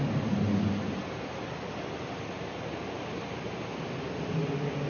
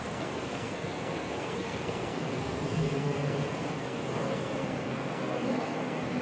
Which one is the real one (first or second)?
first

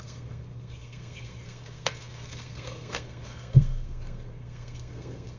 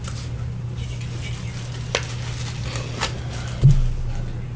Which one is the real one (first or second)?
second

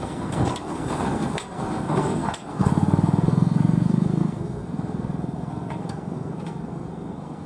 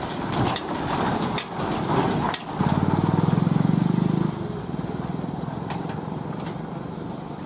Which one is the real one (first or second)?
second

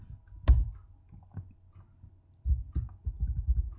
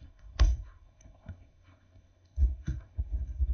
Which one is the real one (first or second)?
first